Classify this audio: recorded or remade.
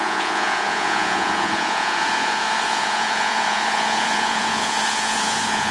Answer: remade